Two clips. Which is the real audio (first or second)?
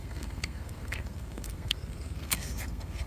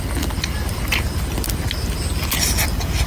second